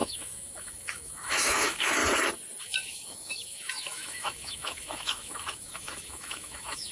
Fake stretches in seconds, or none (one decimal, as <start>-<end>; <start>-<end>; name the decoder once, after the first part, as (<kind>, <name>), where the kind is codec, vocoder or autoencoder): 0.0-2.0 (autoencoder, DAC-VAE); 2.6-6.9